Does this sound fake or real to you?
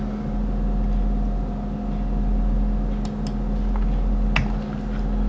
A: real